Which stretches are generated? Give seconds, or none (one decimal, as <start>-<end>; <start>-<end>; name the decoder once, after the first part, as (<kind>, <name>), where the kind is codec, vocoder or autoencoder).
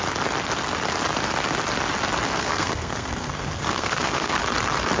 2.3-4.4 (codec, SNAC)